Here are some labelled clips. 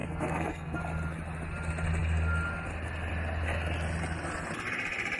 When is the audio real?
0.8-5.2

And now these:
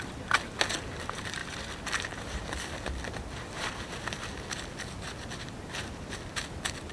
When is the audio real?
0.0-6.9